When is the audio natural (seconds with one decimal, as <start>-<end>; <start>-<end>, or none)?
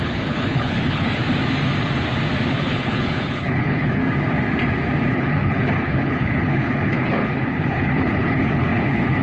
1.2-2.6; 4.0-5.1